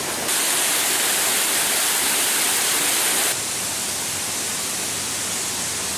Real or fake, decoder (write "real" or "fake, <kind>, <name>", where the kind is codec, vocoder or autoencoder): real